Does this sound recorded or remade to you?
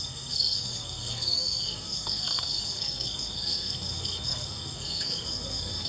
remade